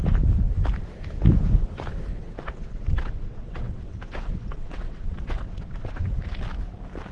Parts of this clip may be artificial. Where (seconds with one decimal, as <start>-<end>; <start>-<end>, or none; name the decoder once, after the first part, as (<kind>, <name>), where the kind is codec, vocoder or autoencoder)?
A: 2.1-6.0 (vocoder, WaveNeXt)